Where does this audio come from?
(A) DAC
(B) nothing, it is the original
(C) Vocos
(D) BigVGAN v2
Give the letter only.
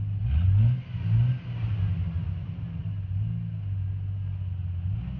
B